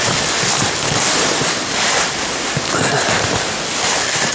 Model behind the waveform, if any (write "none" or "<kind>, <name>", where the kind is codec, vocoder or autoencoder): none